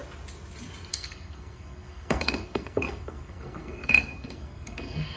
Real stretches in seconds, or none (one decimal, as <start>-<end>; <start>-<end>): 0.0-0.9